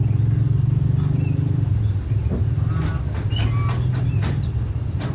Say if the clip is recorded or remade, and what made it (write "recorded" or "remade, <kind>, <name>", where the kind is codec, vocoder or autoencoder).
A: recorded